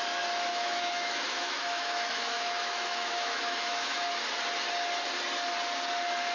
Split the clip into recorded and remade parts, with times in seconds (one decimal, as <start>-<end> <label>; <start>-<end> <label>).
0.0-0.5 recorded; 0.5-4.1 remade; 4.1-6.3 recorded